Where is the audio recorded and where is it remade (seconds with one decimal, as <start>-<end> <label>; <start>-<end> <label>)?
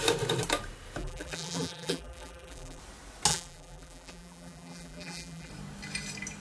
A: 0.0-1.0 recorded; 1.0-2.8 remade; 2.8-3.3 recorded; 3.3-5.5 remade; 5.5-6.4 recorded